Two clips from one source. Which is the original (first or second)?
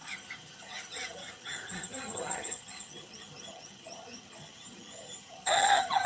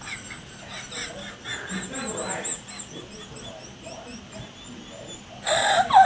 second